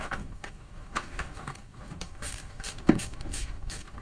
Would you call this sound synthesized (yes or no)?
yes